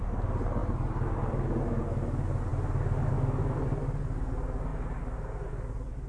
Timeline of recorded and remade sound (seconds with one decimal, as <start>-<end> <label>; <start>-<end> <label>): 0.0-4.7 recorded; 4.7-5.5 remade; 5.5-6.1 recorded